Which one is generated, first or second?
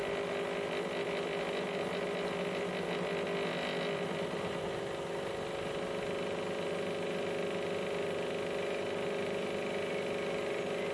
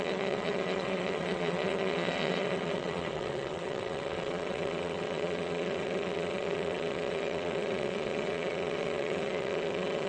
second